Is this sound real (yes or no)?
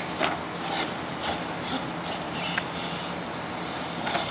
yes